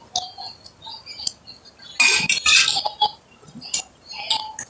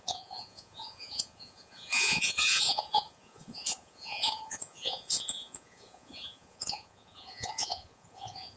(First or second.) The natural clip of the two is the first